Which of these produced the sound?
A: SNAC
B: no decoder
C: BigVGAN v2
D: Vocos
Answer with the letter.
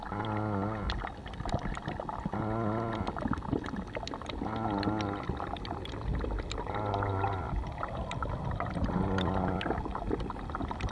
B